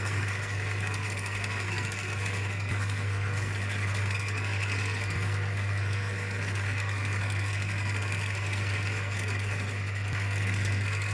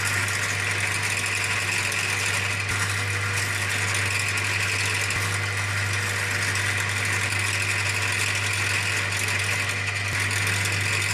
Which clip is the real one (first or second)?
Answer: second